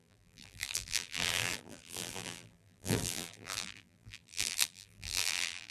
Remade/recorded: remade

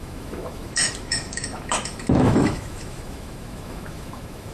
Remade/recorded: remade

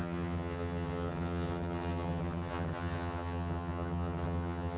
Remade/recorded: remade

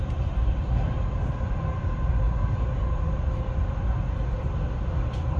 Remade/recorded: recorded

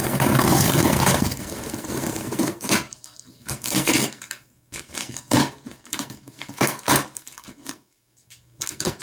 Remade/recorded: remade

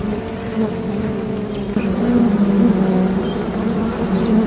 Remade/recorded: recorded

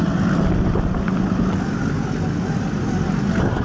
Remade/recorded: recorded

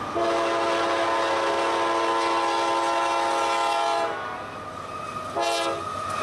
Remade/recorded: recorded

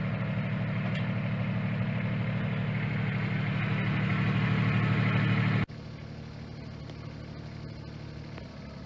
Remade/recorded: recorded